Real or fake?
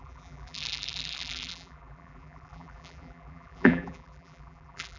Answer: fake